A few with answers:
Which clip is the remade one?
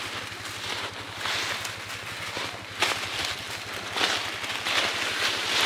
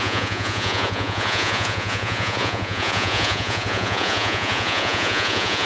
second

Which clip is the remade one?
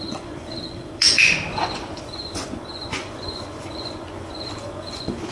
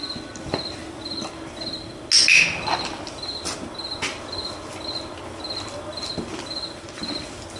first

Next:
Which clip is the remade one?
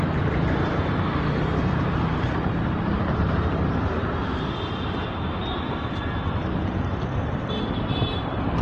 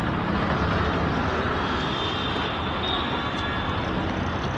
first